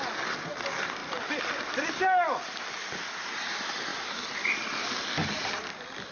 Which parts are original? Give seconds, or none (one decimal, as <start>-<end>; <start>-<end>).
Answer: 0.0-1.0; 3.2-3.9; 4.5-6.1